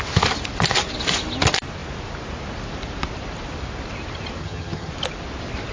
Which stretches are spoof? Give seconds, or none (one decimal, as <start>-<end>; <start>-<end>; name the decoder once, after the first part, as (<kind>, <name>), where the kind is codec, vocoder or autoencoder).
4.4-4.9 (vocoder, HiFi-GAN)